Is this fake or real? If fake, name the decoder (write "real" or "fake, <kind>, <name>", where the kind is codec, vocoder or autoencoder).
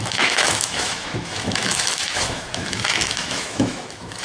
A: fake, autoencoder, DAC-VAE